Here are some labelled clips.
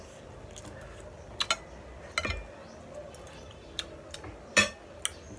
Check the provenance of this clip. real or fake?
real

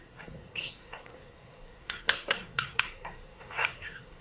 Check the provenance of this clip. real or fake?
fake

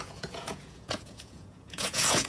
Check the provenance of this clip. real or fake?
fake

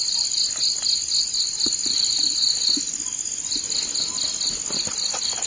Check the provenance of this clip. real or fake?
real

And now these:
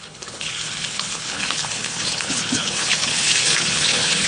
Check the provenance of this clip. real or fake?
fake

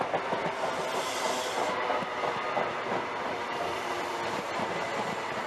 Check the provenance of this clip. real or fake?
real